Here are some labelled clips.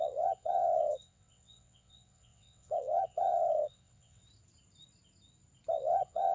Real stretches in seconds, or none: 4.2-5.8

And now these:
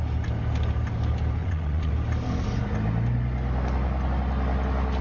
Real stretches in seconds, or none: 0.0-1.4; 1.9-5.0

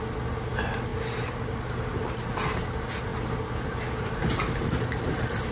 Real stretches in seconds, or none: 0.0-5.5

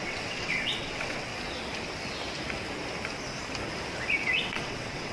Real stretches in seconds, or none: 1.3-4.4